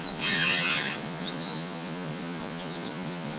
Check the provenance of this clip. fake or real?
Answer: fake